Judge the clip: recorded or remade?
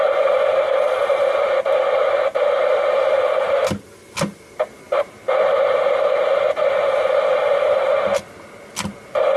recorded